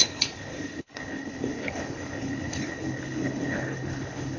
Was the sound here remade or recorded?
remade